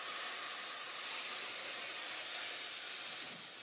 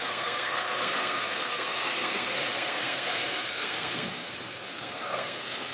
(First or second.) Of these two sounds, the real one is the first